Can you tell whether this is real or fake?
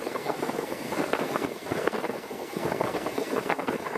fake